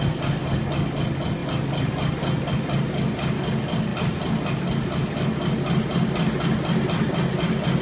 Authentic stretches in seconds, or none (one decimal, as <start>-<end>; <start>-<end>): 0.0-7.8